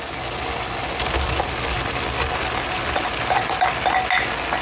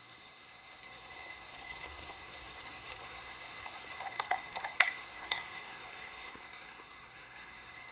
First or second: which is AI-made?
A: second